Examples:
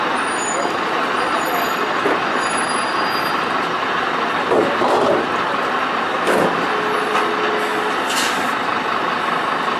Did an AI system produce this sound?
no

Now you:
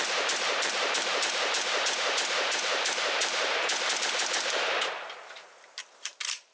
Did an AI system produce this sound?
yes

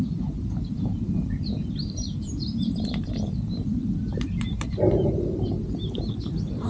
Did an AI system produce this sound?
yes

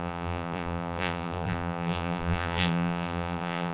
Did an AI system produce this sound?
yes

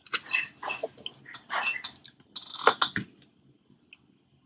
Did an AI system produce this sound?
no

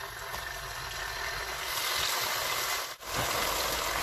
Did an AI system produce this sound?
no